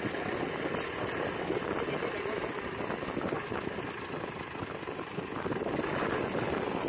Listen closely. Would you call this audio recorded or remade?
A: recorded